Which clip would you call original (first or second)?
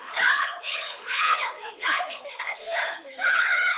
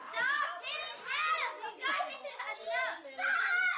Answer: second